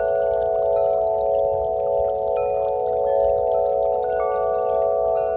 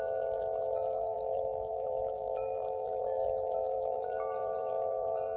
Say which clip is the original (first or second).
first